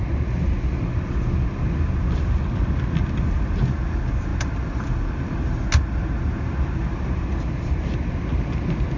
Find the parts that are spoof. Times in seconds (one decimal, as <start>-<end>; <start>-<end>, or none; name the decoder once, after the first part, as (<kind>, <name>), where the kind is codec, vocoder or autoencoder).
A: none